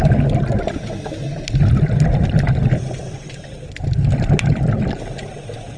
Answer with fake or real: real